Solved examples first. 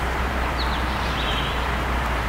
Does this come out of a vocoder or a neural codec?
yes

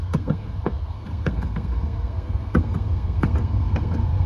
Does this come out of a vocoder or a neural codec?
yes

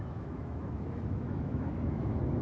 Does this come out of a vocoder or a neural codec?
yes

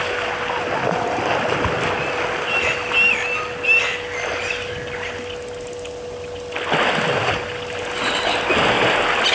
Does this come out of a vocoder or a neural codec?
no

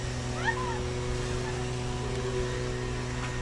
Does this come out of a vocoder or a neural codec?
no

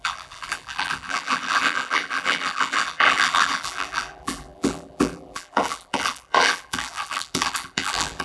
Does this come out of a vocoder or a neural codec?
yes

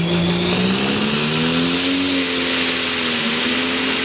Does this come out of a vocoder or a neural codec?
no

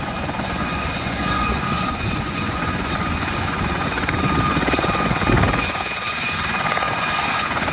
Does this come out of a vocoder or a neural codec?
yes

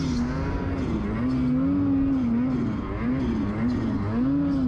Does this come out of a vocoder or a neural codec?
no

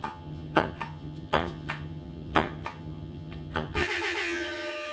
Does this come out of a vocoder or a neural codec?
yes